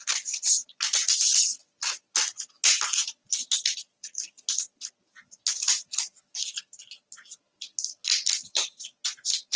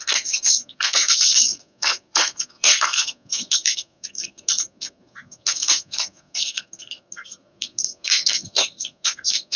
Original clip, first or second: first